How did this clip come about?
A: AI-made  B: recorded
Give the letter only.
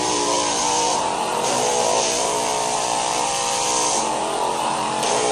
A